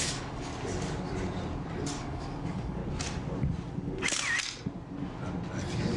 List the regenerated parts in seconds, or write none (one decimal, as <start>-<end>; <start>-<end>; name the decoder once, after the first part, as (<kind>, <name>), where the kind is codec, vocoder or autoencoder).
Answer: 0.0-0.5 (codec, DAC); 2.0-2.8